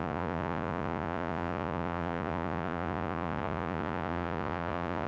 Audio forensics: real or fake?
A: fake